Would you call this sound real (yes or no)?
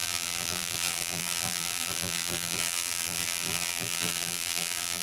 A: no